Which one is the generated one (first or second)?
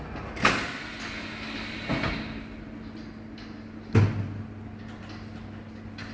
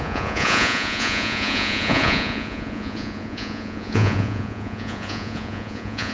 second